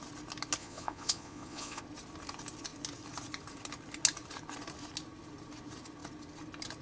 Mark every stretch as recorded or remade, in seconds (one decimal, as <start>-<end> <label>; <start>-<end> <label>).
0.0-0.6 recorded; 0.6-1.8 remade; 1.8-6.8 recorded